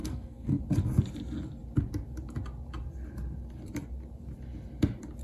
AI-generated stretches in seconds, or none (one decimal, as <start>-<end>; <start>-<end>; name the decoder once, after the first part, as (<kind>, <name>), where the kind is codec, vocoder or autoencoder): 0.0-0.6 (codec, SNAC)